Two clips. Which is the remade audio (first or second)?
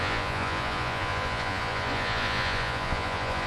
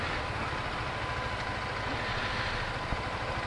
first